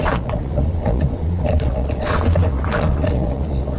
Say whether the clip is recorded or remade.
remade